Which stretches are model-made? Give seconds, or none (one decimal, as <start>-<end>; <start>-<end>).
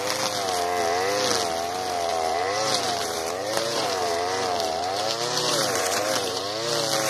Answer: 2.1-6.4